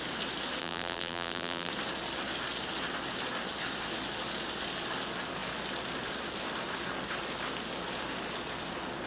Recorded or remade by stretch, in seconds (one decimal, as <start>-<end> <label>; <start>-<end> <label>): 0.0-0.6 recorded; 0.6-1.7 remade; 1.7-9.1 recorded

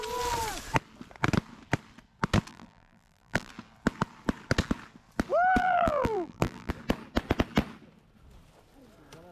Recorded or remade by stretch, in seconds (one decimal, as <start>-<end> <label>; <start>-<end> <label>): 0.0-2.5 recorded; 2.5-3.5 remade; 3.5-5.6 recorded; 5.6-6.7 remade; 6.7-9.3 recorded

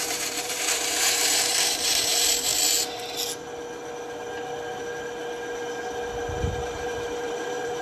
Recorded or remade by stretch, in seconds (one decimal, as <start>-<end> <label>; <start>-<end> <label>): 0.0-2.5 remade; 2.5-6.4 recorded; 6.4-7.8 remade

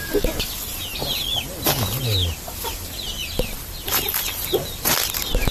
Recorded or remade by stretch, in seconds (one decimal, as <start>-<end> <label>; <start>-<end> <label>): 0.0-0.9 recorded; 0.9-2.0 remade; 2.0-3.2 recorded; 3.2-4.9 remade; 4.9-5.5 recorded

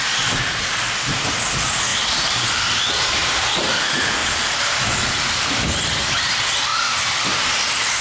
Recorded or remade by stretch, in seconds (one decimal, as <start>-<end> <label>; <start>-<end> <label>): 0.0-1.9 recorded; 1.9-2.5 remade; 2.5-3.2 recorded; 3.2-3.7 remade; 3.7-4.2 recorded; 4.2-4.9 remade; 4.9-8.0 recorded